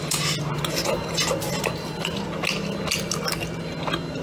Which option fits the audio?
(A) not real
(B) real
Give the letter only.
B